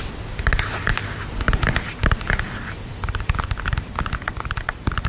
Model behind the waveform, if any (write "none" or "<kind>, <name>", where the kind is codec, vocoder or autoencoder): none